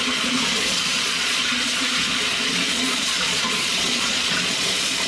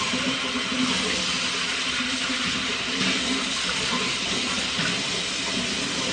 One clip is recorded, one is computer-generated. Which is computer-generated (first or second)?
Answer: first